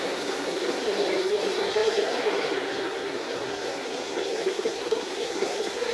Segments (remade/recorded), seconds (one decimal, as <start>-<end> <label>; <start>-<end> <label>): 0.0-5.9 remade